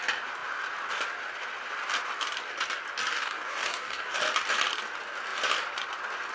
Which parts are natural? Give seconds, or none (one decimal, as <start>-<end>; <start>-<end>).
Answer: 0.0-3.1; 4.2-6.3